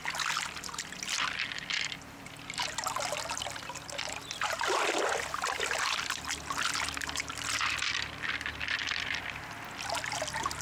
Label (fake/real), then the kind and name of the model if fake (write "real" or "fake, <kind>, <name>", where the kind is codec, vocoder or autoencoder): real